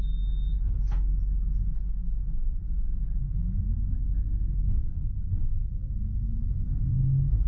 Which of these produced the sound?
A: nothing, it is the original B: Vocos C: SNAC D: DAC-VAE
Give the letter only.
A